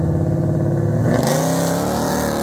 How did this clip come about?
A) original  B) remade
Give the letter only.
A